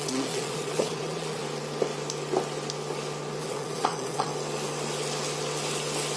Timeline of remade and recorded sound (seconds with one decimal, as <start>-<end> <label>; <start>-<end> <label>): 0.0-1.4 remade; 1.4-3.4 recorded; 3.4-4.3 remade; 4.3-6.2 recorded